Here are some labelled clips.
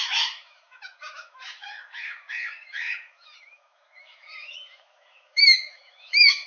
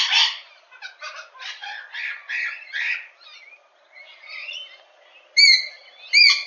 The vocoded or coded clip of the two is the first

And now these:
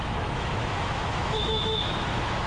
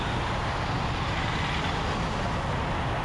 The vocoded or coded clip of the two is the first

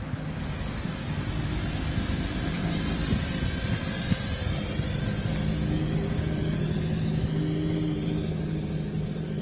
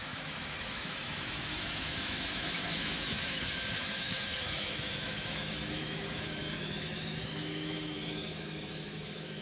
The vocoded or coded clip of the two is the second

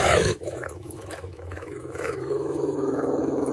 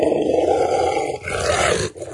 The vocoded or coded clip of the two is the first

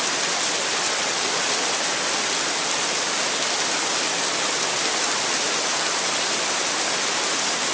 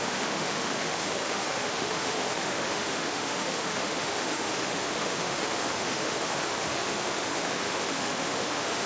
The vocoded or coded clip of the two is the second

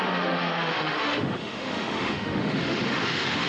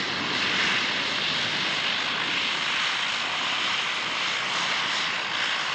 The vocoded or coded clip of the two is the first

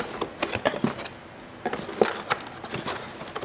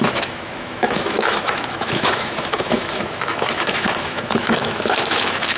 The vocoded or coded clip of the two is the second